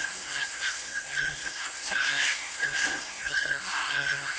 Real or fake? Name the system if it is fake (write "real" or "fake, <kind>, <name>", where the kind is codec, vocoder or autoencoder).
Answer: fake, codec, SNAC